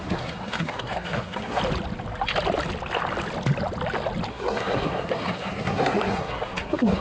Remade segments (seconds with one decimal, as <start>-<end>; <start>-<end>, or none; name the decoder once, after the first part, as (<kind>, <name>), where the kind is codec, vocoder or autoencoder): 0.0-1.6 (codec, SNAC); 4.3-7.0